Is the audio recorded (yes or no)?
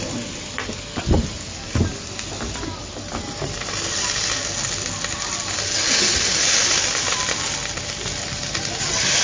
yes